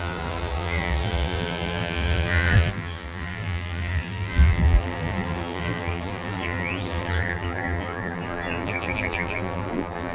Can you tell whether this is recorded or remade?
remade